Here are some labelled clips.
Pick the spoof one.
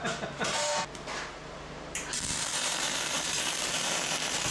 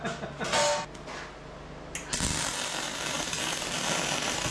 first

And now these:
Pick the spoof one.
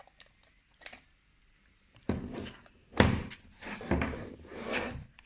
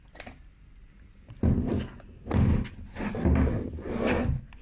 first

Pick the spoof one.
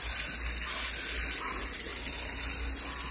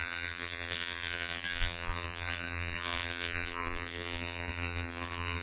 second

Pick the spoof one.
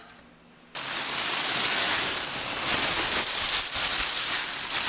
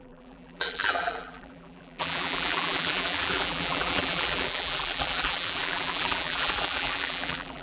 second